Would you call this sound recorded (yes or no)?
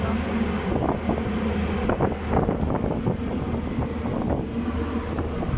yes